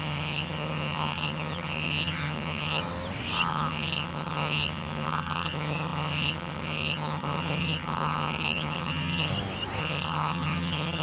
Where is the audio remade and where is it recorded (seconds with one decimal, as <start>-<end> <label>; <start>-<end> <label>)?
0.0-2.8 remade; 2.8-3.5 recorded; 3.5-9.3 remade; 9.3-9.8 recorded; 9.8-11.0 remade